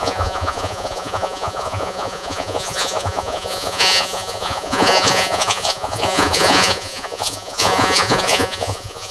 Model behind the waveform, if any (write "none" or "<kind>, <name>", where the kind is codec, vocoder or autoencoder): vocoder, Vocos